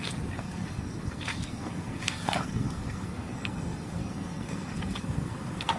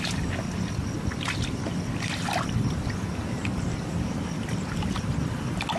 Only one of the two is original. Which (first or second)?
second